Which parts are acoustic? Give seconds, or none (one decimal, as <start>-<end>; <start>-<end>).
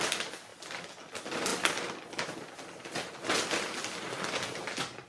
0.0-5.1